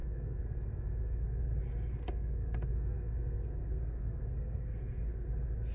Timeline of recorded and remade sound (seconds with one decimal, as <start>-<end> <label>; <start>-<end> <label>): 0.0-1.4 remade; 1.4-1.9 recorded; 1.9-5.3 remade; 5.3-5.7 recorded